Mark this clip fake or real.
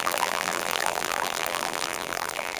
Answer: fake